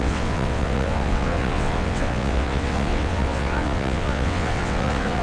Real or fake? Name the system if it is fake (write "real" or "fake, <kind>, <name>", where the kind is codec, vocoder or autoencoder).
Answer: fake, vocoder, WaveNeXt